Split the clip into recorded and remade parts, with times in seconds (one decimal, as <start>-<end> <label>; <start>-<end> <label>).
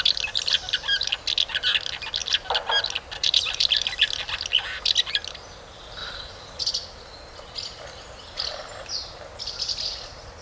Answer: 0.0-3.2 recorded; 3.2-3.9 remade; 3.9-6.0 recorded; 6.0-6.6 remade; 6.6-10.4 recorded